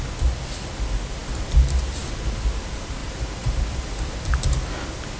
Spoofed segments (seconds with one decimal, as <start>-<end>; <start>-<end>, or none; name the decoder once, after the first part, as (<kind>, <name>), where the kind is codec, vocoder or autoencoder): 3.0-3.6 (vocoder, BigVGAN v2)